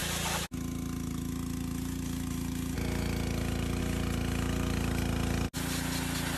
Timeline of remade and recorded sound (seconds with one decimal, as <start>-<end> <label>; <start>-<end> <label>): 0.0-6.4 recorded